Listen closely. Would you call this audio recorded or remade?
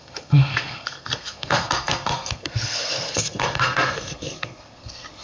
remade